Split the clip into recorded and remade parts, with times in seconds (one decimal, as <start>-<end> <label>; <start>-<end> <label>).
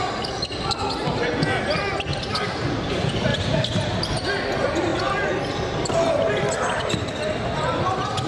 0.0-2.1 recorded; 2.1-2.9 remade; 2.9-3.3 recorded; 3.3-4.0 remade; 4.0-8.3 recorded